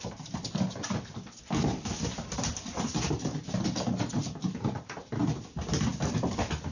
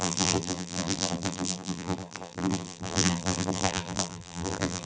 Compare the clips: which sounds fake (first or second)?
second